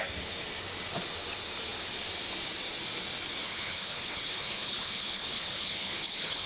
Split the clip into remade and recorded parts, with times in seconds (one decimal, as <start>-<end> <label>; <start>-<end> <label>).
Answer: 0.0-3.4 recorded; 3.4-6.5 remade